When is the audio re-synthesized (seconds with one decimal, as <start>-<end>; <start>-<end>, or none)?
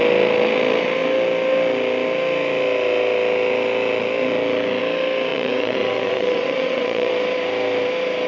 5.3-7.1